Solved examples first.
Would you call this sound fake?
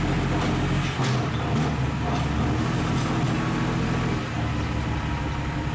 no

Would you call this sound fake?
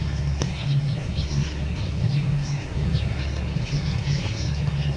yes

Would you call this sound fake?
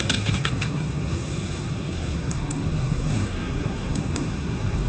yes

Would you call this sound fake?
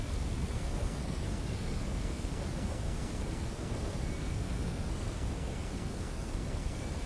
yes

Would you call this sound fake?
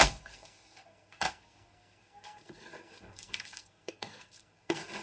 yes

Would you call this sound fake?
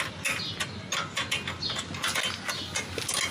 no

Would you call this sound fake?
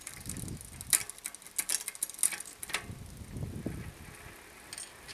no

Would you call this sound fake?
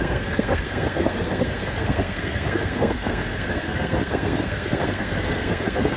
yes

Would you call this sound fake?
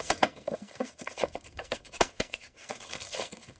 yes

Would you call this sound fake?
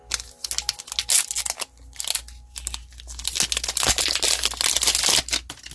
no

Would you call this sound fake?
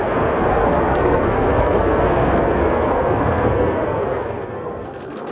yes